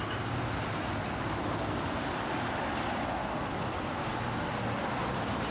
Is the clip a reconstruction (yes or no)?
no